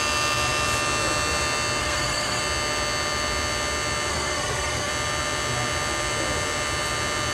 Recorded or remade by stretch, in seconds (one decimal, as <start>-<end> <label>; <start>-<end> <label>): 0.0-1.8 recorded; 1.8-2.4 remade; 2.4-4.1 recorded; 4.1-4.9 remade; 4.9-7.3 recorded